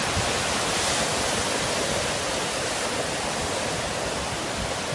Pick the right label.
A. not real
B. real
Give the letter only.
B